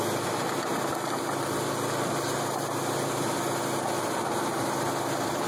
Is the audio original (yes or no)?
yes